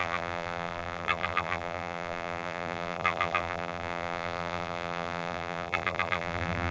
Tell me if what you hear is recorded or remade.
remade